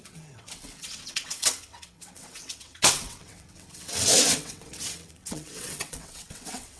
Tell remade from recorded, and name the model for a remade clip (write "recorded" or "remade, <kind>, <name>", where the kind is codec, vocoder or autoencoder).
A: remade, vocoder, WaveNeXt